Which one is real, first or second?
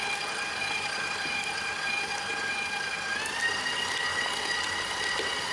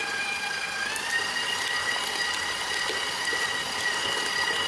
first